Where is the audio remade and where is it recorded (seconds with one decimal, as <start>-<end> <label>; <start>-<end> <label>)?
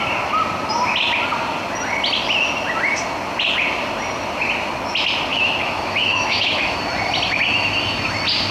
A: 0.0-5.3 recorded; 5.3-6.8 remade; 6.8-8.5 recorded